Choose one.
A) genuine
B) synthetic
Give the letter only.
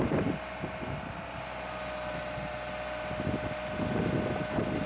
A